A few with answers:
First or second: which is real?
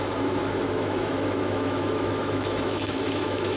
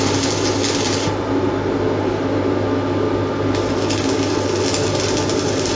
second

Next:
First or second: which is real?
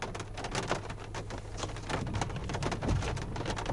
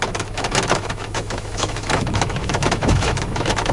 first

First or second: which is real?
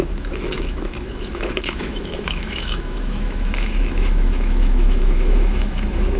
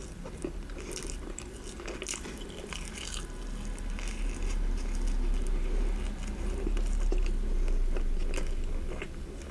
second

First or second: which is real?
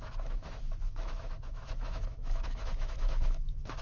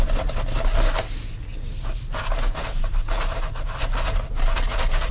second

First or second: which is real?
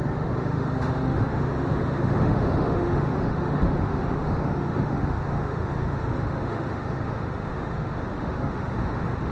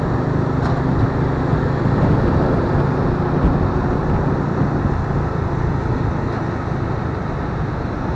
second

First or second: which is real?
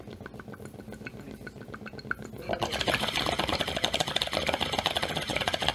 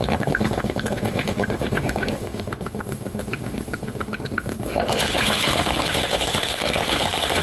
first